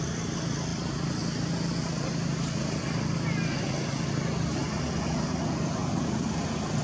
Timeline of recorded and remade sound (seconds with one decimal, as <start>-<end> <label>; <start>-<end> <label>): 0.0-6.8 recorded